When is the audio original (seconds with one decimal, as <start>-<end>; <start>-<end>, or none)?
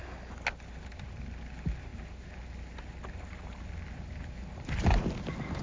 0.0-5.6